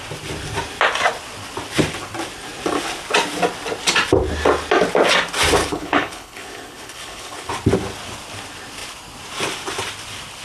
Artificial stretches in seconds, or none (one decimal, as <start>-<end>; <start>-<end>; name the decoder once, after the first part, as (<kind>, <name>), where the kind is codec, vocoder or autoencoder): 5.6-7.5 (codec, HILCodec)